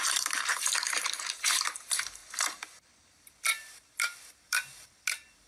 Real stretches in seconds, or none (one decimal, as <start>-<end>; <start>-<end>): 2.2-5.5